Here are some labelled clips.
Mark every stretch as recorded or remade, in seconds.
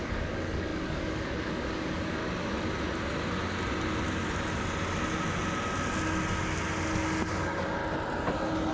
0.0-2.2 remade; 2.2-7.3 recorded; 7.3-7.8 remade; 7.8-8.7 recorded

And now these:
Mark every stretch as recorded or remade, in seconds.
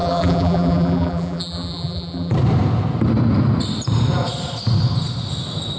0.0-2.3 remade; 2.3-5.8 recorded